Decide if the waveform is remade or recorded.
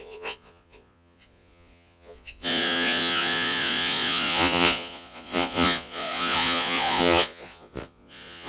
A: remade